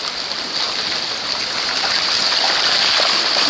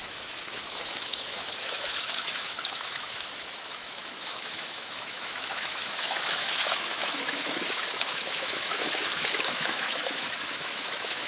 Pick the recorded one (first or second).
first